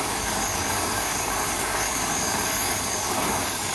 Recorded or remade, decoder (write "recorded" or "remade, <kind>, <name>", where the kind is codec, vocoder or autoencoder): remade, codec, DAC